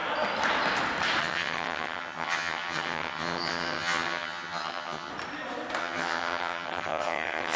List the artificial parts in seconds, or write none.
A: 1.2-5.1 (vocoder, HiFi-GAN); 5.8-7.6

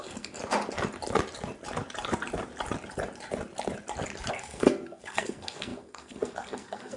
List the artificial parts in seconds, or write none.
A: 0.0-0.4 (codec, SNAC); 4.3-7.0